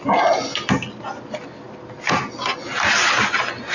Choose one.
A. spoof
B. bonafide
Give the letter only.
B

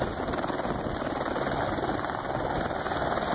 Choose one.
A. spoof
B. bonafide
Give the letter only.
B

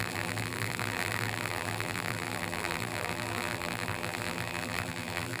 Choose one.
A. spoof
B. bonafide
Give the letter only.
A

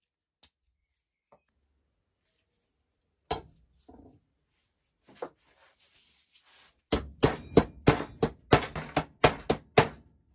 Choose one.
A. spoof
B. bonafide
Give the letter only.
B